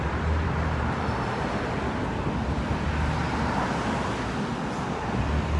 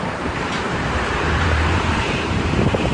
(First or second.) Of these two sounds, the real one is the first